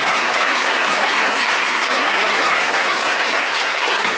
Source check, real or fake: fake